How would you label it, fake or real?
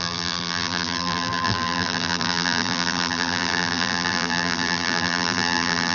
fake